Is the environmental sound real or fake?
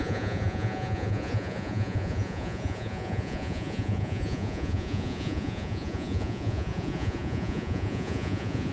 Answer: fake